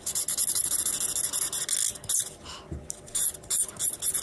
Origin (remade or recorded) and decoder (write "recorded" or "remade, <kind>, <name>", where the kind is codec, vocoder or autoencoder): recorded